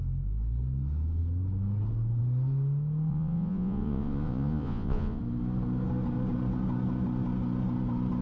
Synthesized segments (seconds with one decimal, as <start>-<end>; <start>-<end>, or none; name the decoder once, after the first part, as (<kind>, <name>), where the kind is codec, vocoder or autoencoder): 3.1-5.2 (vocoder, Vocos)